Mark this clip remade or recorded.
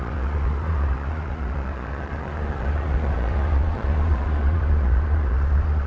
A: remade